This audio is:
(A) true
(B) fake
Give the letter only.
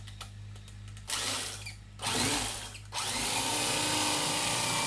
A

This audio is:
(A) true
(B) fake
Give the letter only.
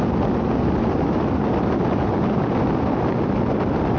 A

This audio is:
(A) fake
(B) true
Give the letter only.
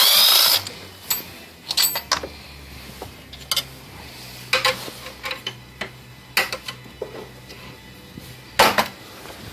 B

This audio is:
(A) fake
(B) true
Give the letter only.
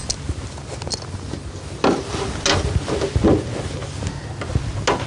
B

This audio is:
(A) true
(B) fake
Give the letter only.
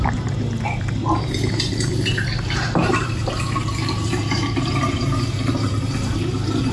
B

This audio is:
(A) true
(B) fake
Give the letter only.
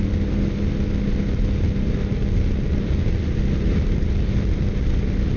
A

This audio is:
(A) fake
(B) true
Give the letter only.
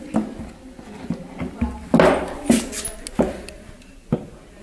B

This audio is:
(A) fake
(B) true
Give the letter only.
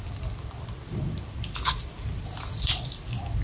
A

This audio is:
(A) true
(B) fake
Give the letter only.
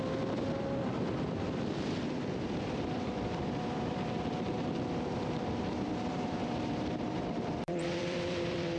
B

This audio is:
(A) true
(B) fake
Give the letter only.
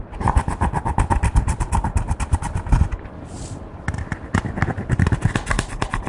B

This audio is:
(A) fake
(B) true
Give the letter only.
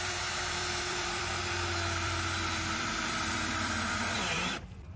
A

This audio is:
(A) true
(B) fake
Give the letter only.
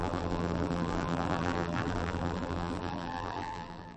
B